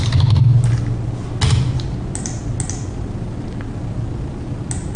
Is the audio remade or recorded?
recorded